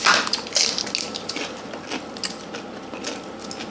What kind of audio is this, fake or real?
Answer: real